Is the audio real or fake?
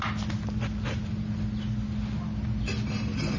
real